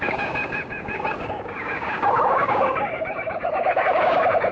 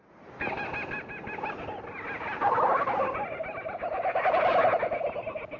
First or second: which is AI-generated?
first